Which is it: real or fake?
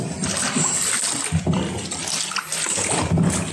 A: real